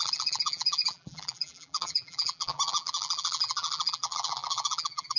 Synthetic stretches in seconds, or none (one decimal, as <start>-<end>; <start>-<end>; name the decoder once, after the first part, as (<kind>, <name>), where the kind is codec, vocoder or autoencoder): 0.0-5.2 (vocoder, BigVGAN v2)